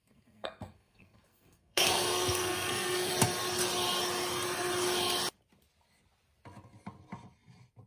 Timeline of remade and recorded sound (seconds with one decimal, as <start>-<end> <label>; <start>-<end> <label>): 0.0-3.1 remade; 3.1-7.9 recorded